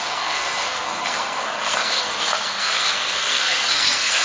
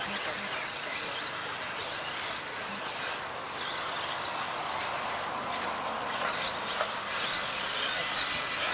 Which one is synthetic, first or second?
first